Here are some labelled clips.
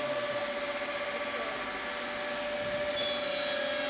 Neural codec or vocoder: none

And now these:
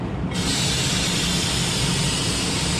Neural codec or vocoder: none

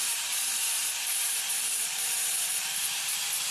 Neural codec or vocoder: vocoder, BigVGAN v2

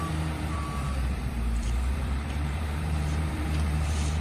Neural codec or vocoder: vocoder, BigVGAN v2